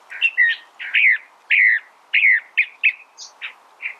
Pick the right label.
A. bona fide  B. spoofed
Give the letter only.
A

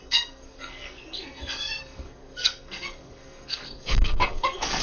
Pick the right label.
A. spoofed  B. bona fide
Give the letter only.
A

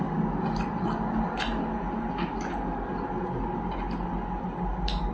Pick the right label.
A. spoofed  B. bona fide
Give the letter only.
B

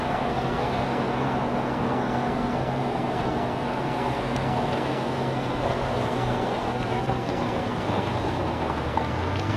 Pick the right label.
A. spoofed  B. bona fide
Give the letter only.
A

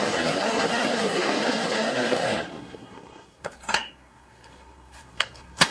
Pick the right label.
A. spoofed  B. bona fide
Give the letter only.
A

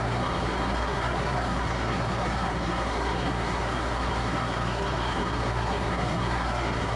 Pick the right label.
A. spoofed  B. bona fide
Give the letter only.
A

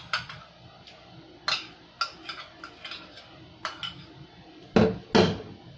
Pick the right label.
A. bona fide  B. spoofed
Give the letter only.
A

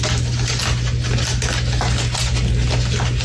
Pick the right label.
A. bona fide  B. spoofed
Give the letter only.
A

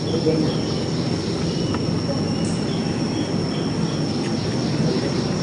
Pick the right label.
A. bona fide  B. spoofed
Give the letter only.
A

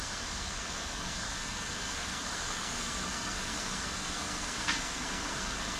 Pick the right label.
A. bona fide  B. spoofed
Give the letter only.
B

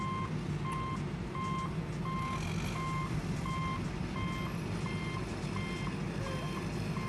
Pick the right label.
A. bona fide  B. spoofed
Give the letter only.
A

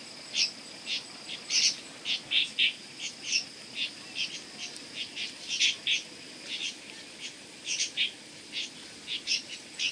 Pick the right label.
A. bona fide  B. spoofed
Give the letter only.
A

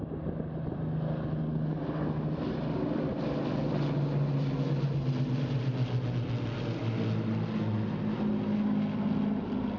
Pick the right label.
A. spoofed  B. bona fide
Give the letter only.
B